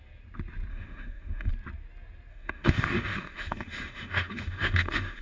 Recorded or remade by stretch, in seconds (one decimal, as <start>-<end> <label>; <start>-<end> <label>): 0.0-0.7 recorded; 0.7-1.5 remade; 1.5-2.3 recorded; 2.3-5.2 remade